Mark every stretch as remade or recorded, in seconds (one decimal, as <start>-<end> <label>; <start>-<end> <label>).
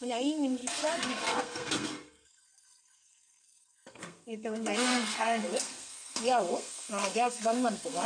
0.0-8.1 remade